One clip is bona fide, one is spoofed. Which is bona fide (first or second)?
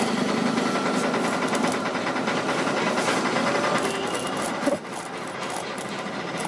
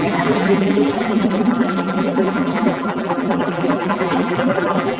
first